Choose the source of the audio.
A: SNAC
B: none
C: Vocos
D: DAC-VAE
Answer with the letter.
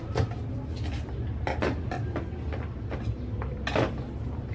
B